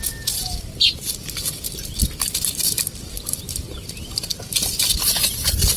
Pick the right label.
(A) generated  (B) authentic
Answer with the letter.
B